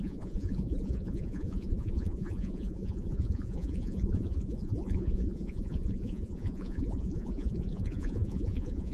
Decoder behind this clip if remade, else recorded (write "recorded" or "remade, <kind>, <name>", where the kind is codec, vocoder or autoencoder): remade, vocoder, Vocos